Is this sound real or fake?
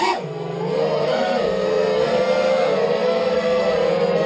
fake